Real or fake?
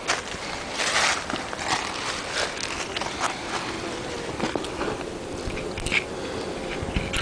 real